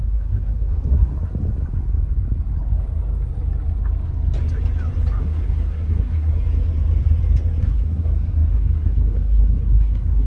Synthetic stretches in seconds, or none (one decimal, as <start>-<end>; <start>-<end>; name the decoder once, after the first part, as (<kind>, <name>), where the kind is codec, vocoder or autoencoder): 0.0-1.1 (codec, SNAC); 5.2-6.3; 7.6-10.3